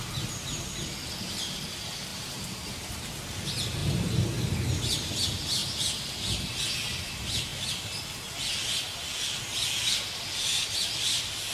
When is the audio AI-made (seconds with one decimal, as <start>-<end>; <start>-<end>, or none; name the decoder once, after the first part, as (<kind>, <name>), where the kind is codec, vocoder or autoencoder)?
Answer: 2.1-2.7 (vocoder, BigVGAN v2); 3.8-4.4